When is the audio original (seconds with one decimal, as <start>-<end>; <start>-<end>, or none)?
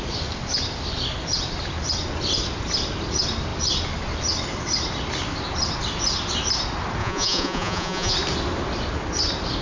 0.0-7.0; 8.1-9.6